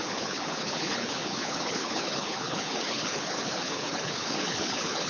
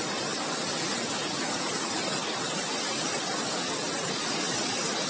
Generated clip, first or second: first